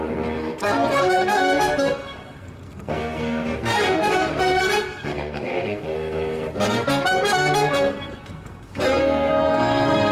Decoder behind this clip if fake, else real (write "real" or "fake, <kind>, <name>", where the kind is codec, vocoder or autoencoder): fake, codec, SNAC